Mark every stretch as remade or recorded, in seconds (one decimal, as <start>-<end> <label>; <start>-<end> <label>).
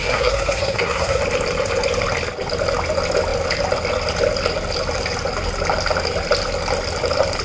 0.0-1.2 remade; 1.2-7.4 recorded